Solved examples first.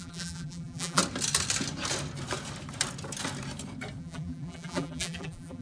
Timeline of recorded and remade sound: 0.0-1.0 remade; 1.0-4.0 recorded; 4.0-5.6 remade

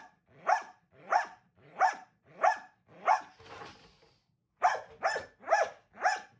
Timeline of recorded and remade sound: 0.0-0.6 recorded; 0.6-2.3 remade; 2.3-6.4 recorded

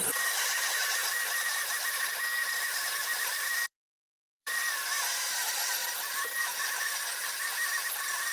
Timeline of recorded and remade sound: 0.0-5.8 remade; 5.8-6.9 recorded; 6.9-8.3 remade